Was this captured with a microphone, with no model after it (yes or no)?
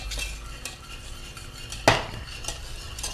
yes